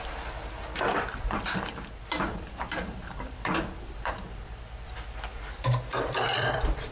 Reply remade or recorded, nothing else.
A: remade